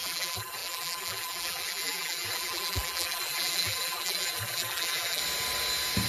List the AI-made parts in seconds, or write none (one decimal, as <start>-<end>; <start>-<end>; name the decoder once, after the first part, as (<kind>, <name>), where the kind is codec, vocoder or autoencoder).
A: 0.0-5.2 (vocoder, BigVGAN v2)